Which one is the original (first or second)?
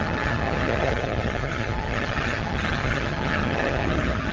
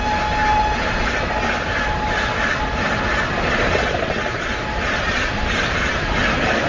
second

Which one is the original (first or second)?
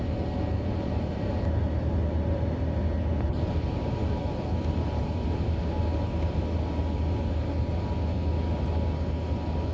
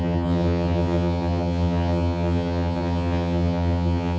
first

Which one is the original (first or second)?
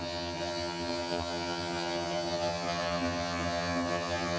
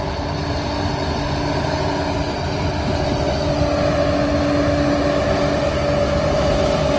second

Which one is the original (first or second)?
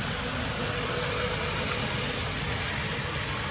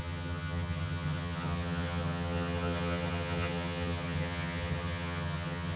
first